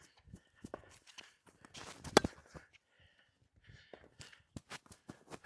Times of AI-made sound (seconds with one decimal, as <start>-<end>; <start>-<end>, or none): none